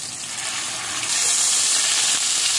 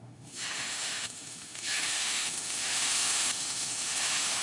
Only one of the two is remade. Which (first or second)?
second